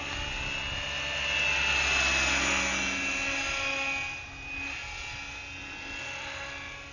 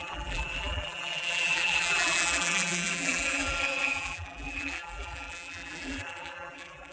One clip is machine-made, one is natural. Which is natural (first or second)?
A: first